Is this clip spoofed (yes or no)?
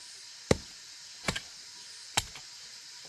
no